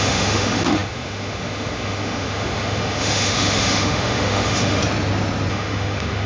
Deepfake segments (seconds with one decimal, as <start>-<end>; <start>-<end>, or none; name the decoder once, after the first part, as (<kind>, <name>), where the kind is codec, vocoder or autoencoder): 0.0-4.8 (autoencoder, DAC-VAE); 5.5-6.3